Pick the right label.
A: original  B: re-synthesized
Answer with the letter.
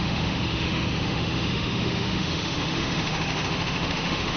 B